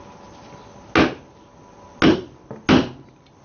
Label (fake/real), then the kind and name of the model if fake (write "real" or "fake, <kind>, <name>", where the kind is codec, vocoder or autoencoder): real